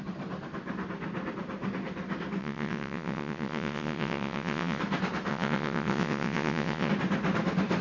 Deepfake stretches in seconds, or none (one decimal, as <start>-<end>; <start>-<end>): 2.4-4.8; 5.3-6.9